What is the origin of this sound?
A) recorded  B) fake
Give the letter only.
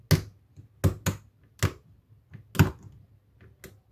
A